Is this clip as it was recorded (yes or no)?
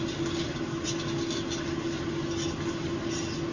yes